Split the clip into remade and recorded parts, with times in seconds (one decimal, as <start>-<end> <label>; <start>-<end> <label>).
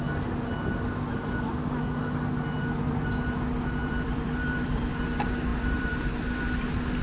0.0-3.8 recorded; 3.8-4.8 remade; 4.8-5.5 recorded; 5.5-6.2 remade; 6.2-7.0 recorded